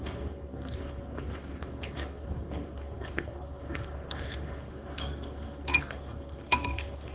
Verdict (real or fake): fake